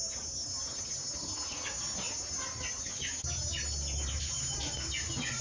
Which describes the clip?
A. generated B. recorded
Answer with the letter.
B